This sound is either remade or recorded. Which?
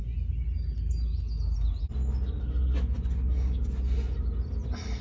recorded